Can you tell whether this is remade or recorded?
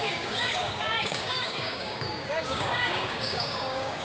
remade